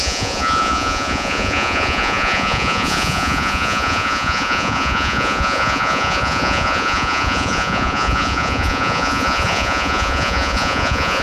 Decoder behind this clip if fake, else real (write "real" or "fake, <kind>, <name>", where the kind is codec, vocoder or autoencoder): fake, vocoder, Vocos